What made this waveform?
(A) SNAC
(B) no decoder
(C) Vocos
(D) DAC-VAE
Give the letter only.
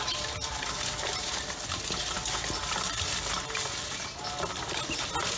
B